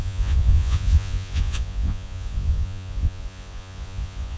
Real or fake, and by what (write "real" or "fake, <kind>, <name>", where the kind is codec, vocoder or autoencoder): fake, vocoder, Vocos